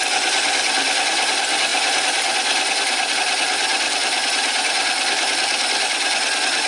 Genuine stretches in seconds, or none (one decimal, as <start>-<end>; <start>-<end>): 0.0-6.7